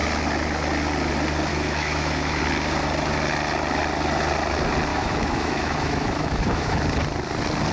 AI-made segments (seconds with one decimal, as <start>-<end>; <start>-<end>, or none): 1.5-2.4; 4.9-6.8